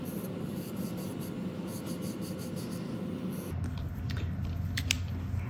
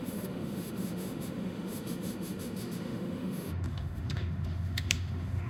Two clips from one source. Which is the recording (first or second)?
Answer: first